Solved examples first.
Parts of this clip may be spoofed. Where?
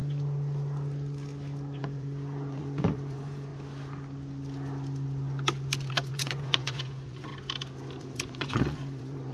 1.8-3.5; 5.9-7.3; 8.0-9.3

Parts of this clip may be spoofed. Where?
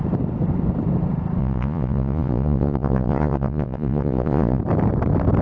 1.4-4.6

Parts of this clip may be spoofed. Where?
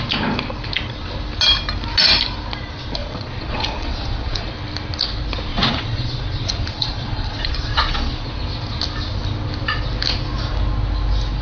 3.0-4.5; 5.5-8.3